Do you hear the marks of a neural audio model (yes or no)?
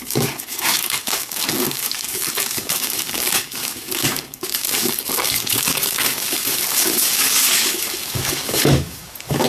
yes